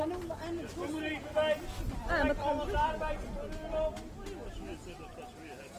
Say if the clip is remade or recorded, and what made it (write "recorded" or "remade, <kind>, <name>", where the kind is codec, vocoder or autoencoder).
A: recorded